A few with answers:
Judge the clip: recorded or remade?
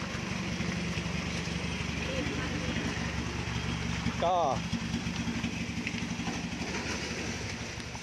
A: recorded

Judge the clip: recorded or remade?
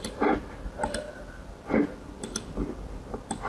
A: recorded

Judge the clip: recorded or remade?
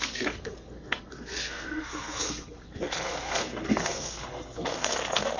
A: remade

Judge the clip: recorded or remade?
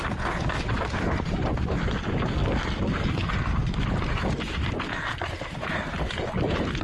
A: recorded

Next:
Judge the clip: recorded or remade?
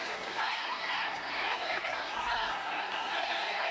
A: remade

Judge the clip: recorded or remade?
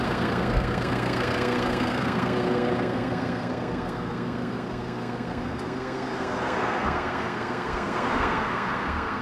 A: remade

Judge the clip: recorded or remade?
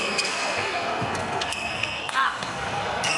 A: remade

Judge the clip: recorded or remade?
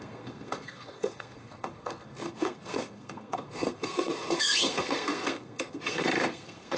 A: remade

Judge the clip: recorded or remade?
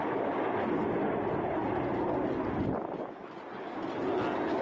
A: recorded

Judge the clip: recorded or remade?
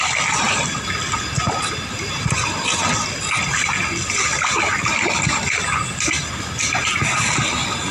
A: recorded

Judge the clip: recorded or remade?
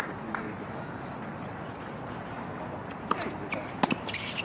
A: recorded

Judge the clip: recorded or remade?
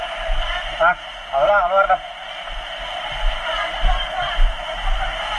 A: recorded